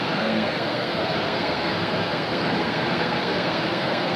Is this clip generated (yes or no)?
yes